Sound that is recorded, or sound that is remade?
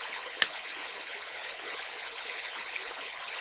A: remade